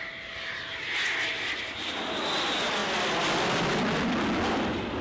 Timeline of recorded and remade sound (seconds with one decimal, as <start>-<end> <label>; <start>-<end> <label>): 0.0-5.0 recorded